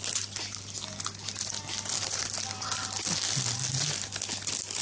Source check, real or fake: real